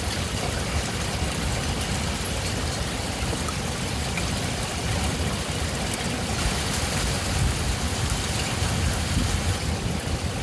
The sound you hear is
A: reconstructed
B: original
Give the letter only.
B